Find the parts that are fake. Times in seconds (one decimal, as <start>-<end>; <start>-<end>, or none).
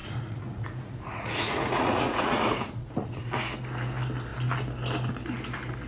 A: 0.0-3.3